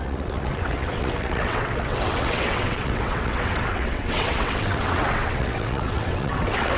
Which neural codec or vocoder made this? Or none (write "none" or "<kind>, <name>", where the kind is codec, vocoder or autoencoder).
vocoder, WaveNeXt